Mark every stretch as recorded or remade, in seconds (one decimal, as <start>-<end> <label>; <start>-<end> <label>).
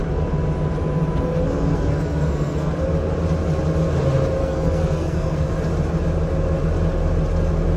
0.0-1.7 recorded; 1.7-2.7 remade; 2.7-4.4 recorded; 4.4-5.5 remade; 5.5-7.8 recorded